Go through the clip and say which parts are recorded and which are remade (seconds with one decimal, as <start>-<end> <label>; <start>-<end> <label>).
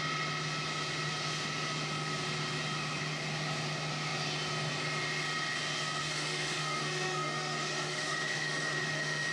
0.0-6.0 recorded; 6.0-9.3 remade